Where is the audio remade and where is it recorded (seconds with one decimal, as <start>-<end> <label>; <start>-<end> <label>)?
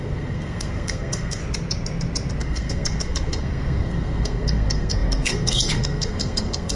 0.0-1.4 remade; 1.4-2.4 recorded; 2.4-6.8 remade